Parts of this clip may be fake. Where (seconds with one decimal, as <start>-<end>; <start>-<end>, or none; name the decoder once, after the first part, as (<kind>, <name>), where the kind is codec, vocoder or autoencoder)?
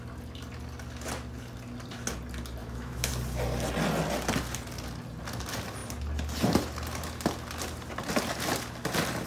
2.6-3.1 (autoencoder, DAC-VAE)